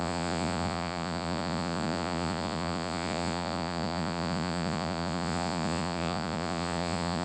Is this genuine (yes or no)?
no